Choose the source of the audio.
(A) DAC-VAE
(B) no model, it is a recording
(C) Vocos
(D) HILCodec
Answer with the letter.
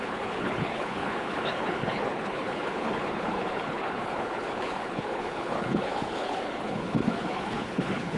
D